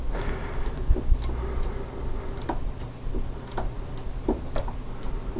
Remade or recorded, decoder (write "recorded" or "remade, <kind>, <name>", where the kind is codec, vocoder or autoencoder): recorded